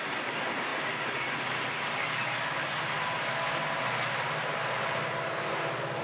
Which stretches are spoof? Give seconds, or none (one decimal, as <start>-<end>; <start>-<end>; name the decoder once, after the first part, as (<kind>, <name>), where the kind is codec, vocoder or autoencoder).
none

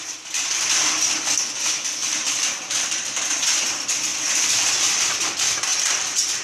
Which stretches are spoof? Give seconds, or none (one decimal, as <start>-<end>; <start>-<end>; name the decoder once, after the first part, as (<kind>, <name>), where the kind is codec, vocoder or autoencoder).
2.0-3.2 (vocoder, BigVGAN v2); 5.7-6.4

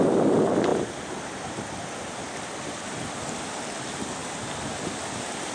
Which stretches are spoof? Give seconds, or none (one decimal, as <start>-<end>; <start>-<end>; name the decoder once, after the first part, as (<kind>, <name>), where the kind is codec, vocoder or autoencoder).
none

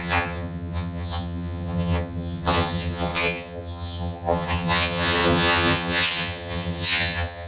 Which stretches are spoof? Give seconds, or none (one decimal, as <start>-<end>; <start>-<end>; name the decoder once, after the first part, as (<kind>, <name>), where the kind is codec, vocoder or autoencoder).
0.0-7.5 (vocoder, HiFi-GAN)

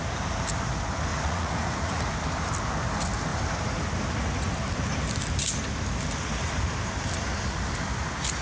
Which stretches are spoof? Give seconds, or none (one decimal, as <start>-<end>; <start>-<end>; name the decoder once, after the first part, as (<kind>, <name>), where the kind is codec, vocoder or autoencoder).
1.1-2.0 (vocoder, Vocos)